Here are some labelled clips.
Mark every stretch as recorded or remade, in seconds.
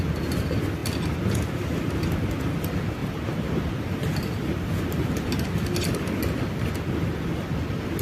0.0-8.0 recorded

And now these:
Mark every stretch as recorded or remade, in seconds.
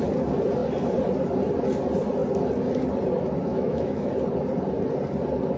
0.0-3.5 recorded; 3.5-4.1 remade; 4.1-5.6 recorded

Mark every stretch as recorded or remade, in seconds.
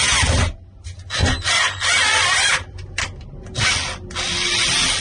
0.0-5.0 recorded